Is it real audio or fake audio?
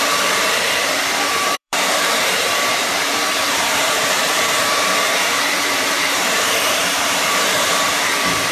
fake